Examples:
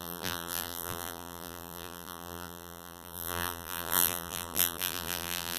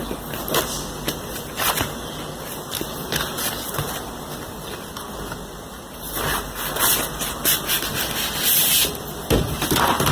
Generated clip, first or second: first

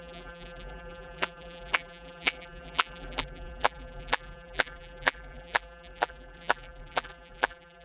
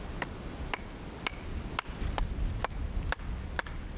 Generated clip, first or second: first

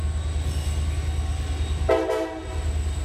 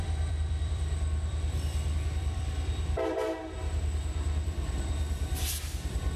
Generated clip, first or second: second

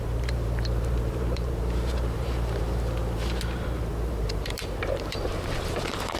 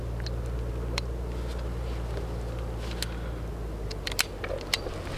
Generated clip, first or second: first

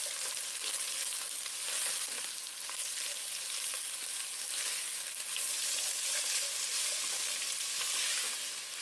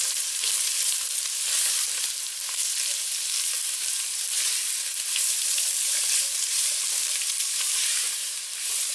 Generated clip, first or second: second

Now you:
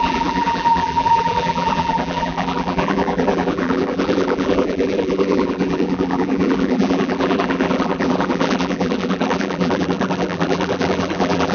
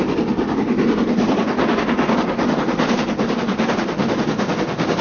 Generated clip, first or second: first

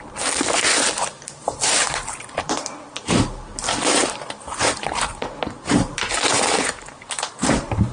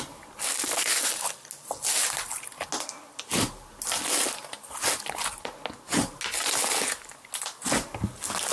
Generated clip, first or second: first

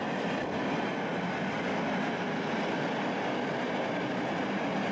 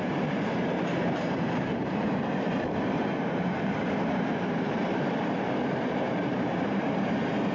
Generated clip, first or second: second